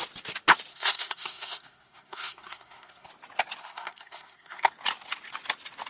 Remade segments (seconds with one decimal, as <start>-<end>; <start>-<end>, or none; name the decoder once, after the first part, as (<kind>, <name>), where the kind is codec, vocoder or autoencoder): 0.7-3.1 (codec, SNAC); 3.6-4.7